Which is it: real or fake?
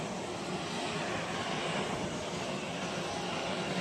real